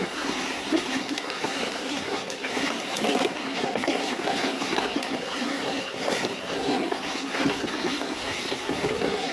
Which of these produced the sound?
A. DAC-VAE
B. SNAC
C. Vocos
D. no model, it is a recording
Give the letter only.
B